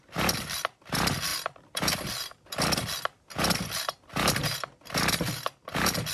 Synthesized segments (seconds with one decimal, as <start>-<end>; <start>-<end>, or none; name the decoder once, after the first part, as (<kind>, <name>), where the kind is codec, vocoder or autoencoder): none